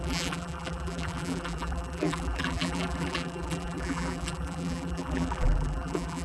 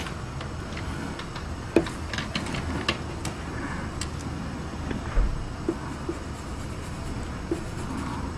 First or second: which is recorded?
second